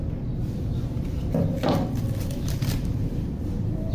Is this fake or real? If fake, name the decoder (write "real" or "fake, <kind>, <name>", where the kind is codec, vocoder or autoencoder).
fake, vocoder, BigVGAN v2